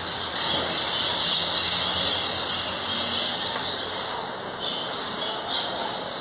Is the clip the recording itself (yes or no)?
yes